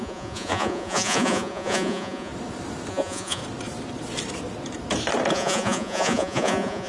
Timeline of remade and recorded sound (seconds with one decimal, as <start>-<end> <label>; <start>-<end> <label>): 0.0-2.3 remade; 2.3-2.9 recorded; 2.9-3.4 remade; 3.4-5.3 recorded; 5.3-6.9 remade